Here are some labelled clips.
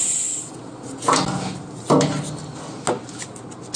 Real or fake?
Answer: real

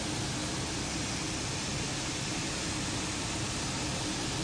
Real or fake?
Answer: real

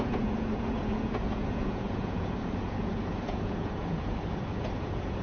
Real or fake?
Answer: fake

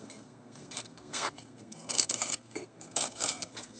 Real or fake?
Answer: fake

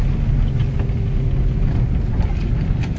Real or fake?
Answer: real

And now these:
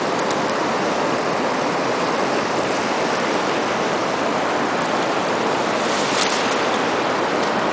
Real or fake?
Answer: real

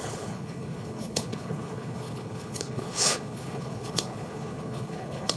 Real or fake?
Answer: fake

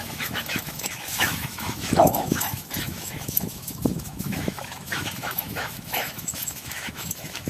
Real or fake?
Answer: fake